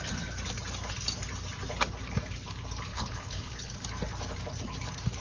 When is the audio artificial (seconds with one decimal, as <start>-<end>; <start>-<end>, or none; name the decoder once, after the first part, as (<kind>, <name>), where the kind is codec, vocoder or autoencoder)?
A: 2.9-3.7 (codec, HILCodec)